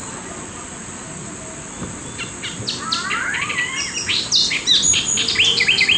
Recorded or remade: recorded